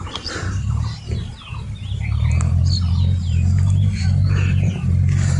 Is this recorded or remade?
recorded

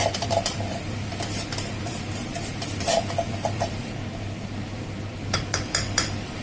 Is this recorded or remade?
remade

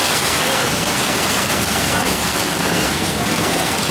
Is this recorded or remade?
remade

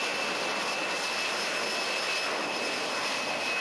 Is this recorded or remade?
recorded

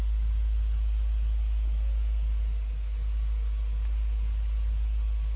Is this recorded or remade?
recorded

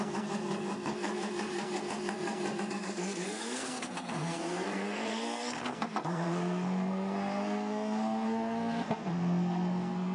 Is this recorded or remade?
remade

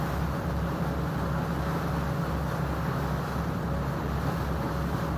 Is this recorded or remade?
recorded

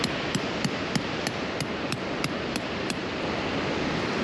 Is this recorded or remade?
recorded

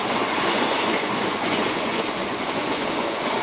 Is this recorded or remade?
remade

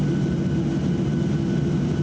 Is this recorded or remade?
recorded